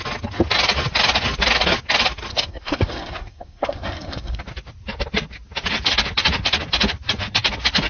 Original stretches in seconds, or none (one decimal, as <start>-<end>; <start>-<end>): 0.0-2.3; 4.4-7.9